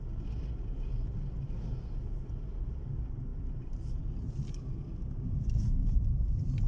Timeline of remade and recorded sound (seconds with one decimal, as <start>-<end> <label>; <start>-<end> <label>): 0.0-3.3 recorded; 3.3-3.9 remade; 3.9-5.8 recorded; 5.8-6.7 remade